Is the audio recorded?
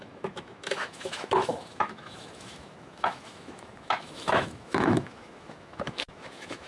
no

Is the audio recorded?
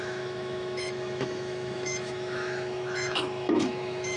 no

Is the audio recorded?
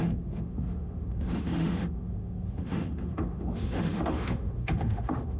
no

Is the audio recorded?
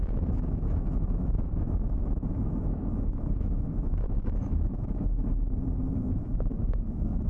no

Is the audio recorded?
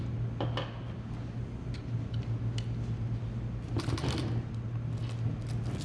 yes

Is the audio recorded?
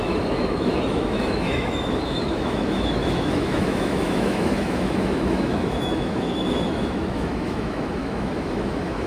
no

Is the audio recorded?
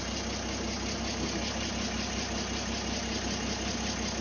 yes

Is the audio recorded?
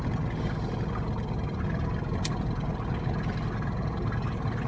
yes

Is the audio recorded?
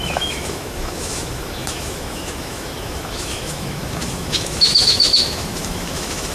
no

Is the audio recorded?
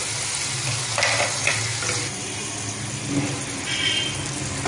yes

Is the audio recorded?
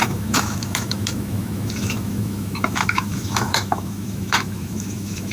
no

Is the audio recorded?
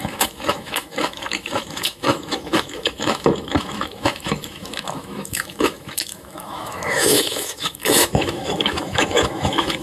no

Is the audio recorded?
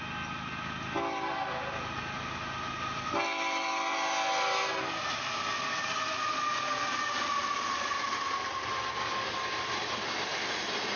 yes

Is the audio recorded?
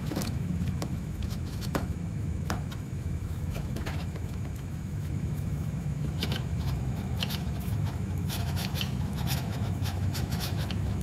no